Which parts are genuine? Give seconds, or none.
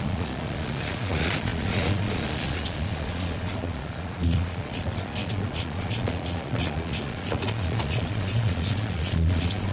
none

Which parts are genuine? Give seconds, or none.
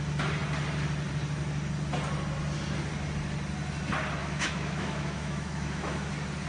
0.0-4.2; 6.1-6.5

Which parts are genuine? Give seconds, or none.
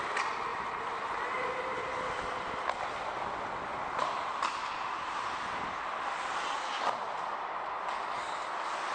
0.0-8.9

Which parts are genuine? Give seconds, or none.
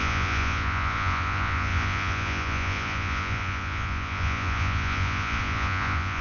none